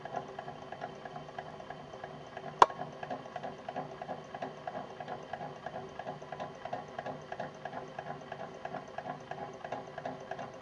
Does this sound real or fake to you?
real